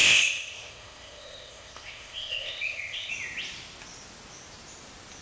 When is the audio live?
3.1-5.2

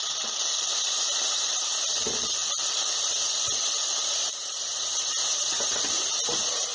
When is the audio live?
0.0-6.7

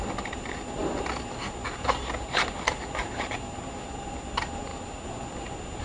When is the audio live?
0.0-5.8

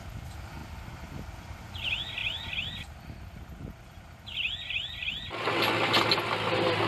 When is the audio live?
0.0-6.9

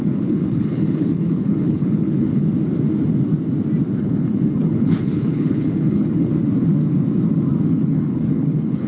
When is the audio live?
2.4-4.0; 6.3-7.7

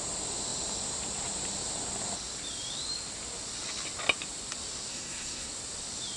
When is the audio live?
0.0-4.9; 5.5-6.2